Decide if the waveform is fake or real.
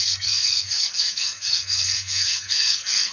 fake